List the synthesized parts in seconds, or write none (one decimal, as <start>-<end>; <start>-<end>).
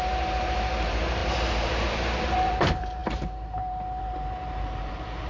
0.0-5.3